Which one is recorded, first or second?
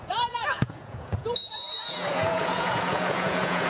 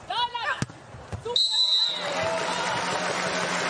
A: second